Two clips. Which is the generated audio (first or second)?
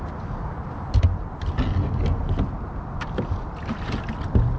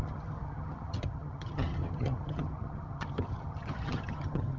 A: second